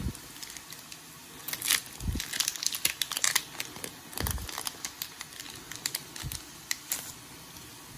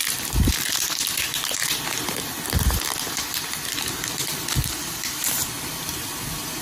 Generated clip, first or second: second